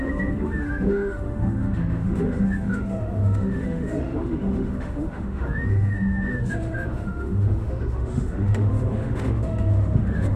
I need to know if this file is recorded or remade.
remade